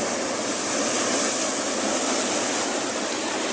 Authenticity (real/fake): real